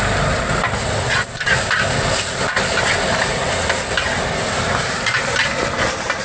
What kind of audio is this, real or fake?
real